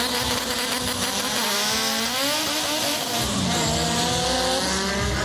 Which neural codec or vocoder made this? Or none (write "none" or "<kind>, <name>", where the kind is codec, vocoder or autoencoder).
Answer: none